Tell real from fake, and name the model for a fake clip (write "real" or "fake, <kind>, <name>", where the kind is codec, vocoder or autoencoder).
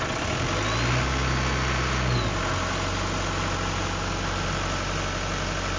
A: real